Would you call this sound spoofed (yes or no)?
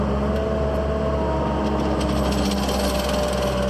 no